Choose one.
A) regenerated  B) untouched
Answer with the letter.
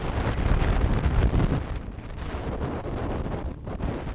B